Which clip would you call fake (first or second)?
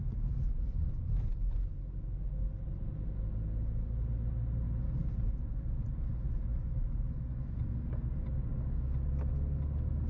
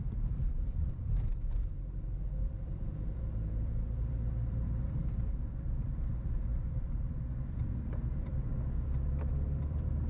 second